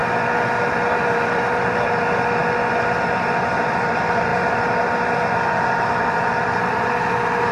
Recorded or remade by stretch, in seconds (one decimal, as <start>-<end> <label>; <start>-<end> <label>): 0.0-0.6 recorded; 0.6-2.4 remade; 2.4-3.4 recorded; 3.4-7.5 remade